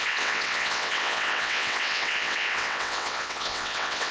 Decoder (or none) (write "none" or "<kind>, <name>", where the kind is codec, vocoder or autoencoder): vocoder, WaveNeXt